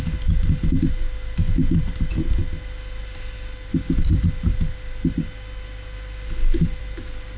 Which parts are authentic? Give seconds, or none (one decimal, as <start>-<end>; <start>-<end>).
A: 0.0-7.4